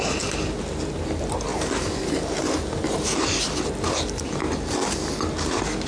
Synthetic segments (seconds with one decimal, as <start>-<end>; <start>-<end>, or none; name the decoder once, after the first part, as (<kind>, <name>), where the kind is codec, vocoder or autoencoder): none